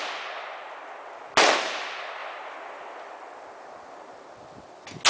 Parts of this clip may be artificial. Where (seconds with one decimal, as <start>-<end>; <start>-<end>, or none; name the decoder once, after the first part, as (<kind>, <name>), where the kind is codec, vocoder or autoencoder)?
none